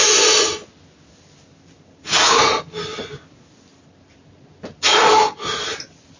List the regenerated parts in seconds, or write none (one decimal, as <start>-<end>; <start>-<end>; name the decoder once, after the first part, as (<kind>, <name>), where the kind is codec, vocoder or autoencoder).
none